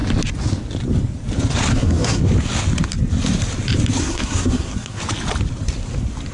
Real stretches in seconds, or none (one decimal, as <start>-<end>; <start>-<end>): 0.0-1.7; 2.2-4.0; 5.0-6.3